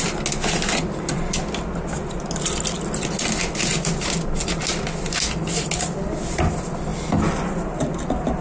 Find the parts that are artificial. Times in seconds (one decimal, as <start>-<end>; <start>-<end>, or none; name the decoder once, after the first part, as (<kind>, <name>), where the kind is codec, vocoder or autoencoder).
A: none